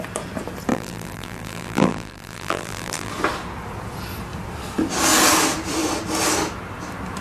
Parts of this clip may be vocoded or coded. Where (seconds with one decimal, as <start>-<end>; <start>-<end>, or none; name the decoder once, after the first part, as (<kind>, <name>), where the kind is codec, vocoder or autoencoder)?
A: 0.7-3.1 (vocoder, BigVGAN v2)